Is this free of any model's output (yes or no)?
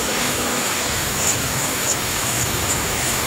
no